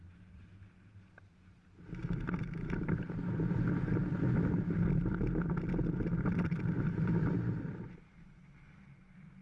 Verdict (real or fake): real